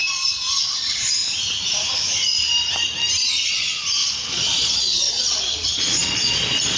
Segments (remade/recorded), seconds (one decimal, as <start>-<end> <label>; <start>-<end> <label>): 0.0-0.5 recorded; 0.5-1.2 remade; 1.2-3.5 recorded; 3.5-6.8 remade